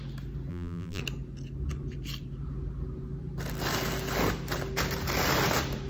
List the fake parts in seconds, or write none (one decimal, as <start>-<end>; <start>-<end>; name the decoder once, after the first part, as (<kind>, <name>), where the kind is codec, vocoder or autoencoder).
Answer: 0.5-1.0 (vocoder, BigVGAN v2)